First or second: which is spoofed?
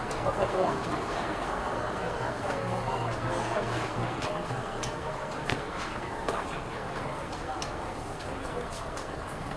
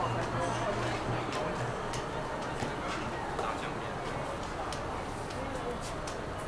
first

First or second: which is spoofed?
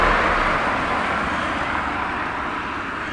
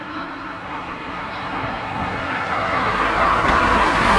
second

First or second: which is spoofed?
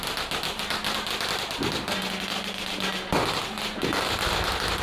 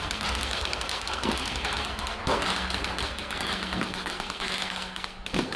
second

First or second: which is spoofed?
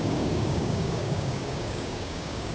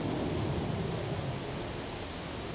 first